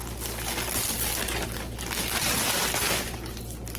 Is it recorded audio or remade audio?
recorded